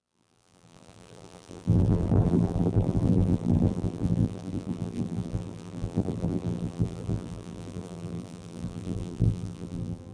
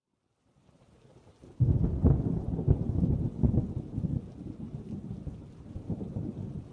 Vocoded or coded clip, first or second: first